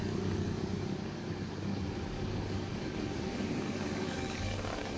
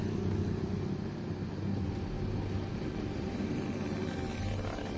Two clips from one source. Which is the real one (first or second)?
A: second